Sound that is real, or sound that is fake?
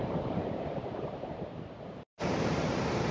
fake